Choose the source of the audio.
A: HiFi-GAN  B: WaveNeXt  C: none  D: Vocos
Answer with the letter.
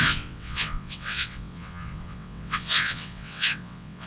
B